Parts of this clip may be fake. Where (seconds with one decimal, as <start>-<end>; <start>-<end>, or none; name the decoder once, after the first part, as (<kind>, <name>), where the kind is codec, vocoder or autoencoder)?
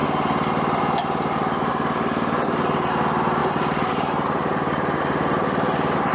3.4-6.1 (vocoder, BigVGAN v2)